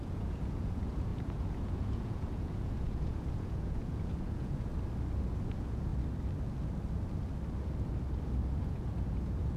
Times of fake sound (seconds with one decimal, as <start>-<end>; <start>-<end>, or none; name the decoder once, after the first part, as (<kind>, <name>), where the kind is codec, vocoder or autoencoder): 0.0-4.7 (vocoder, Vocos); 5.5-5.9; 8.6-9.6